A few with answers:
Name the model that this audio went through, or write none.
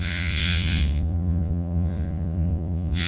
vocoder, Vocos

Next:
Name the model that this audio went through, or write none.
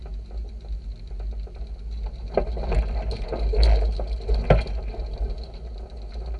none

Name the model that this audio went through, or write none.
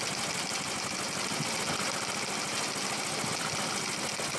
none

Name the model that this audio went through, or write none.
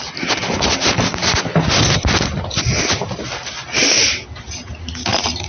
none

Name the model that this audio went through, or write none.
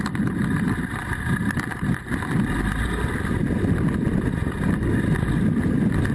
none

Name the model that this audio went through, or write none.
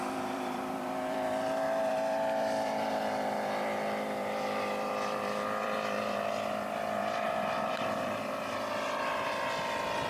vocoder, BigVGAN v2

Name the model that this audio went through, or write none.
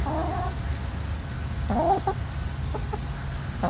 none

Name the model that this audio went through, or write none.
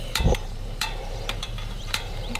vocoder, BigVGAN v2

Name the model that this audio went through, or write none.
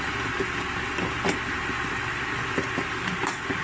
none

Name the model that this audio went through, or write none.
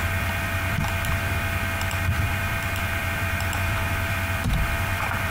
vocoder, BigVGAN v2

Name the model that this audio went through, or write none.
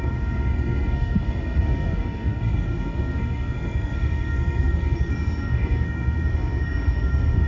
codec, SNAC